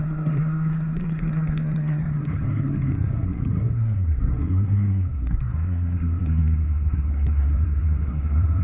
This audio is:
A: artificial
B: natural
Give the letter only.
A